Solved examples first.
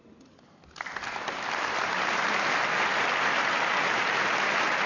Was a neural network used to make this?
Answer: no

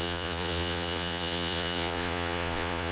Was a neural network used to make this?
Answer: yes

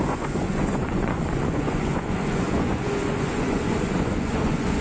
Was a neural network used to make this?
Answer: yes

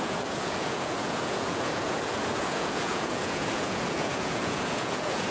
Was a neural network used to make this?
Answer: yes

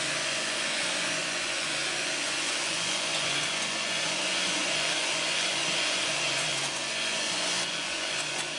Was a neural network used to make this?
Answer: yes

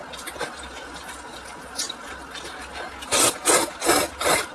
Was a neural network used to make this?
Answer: no